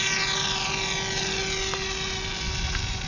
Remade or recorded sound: recorded